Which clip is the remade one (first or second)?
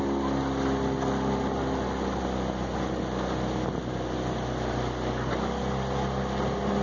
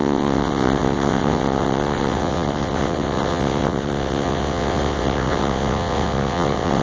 second